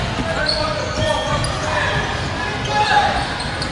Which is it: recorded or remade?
recorded